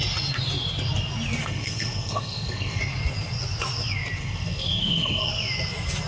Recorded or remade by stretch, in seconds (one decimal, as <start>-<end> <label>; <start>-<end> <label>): 0.0-1.4 recorded; 1.4-2.8 remade; 2.8-4.2 recorded; 4.2-5.3 remade; 5.3-6.1 recorded